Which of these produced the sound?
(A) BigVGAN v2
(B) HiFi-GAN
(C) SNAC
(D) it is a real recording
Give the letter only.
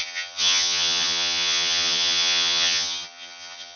B